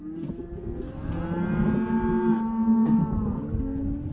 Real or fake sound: real